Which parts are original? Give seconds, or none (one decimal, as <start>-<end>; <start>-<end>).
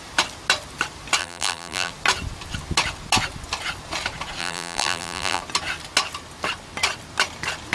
0.0-1.2; 1.9-4.4; 5.4-7.7